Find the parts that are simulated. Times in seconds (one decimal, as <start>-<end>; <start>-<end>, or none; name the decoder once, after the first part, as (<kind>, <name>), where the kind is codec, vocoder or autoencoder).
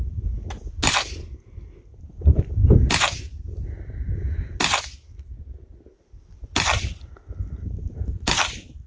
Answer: none